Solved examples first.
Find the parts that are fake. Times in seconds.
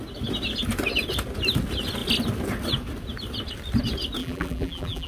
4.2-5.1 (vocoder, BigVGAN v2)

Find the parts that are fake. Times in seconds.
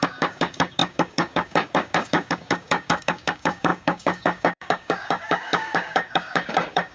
0.0-6.9 (codec, DAC)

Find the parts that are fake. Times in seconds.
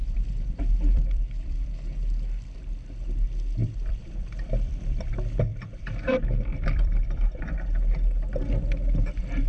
0.0-1.8 (vocoder, BigVGAN v2); 3.6-5.1; 5.5-7.5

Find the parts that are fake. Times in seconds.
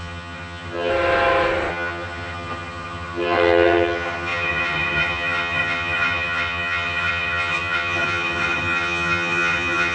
0.0-0.9 (vocoder, HiFi-GAN); 1.7-9.9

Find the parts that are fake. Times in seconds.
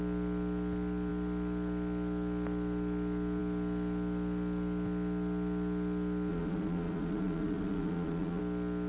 6.3-8.4 (vocoder, Vocos)